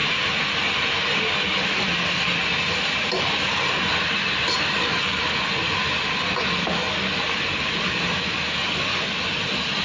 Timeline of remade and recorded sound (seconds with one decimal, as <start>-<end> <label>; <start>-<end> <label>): 0.0-9.8 recorded